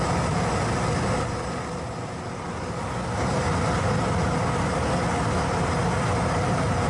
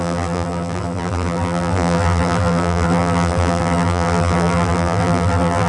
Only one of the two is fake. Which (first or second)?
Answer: second